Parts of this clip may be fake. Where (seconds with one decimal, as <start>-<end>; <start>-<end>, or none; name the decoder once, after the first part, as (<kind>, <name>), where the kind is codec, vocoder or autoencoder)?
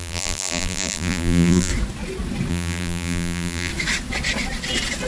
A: 0.0-1.7 (vocoder, BigVGAN v2); 2.5-3.7